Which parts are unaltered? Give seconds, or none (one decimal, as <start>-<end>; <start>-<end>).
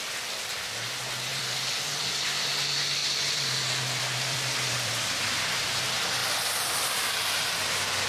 0.0-1.3; 2.0-3.0; 5.3-6.2; 7.1-8.1